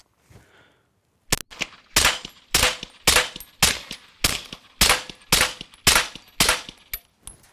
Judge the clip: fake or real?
real